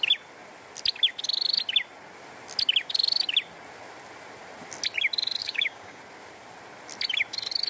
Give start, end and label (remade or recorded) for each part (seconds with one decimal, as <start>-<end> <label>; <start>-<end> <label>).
0.0-5.4 recorded; 5.4-6.0 remade; 6.0-7.7 recorded